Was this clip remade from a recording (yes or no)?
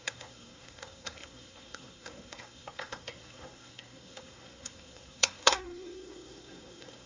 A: yes